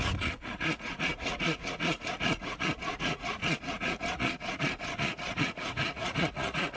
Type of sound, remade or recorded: remade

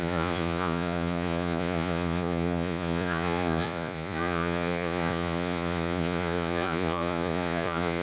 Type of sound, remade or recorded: remade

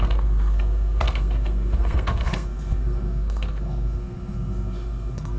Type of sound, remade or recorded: remade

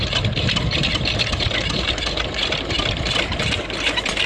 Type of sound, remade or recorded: remade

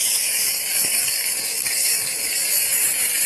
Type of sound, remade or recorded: remade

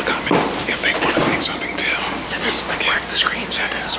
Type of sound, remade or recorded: recorded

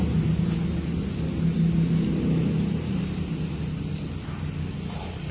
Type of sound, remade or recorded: recorded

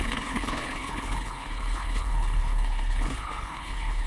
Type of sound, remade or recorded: remade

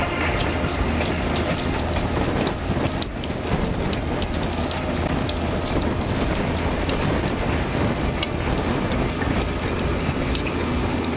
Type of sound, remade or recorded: recorded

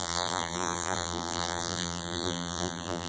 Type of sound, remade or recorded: remade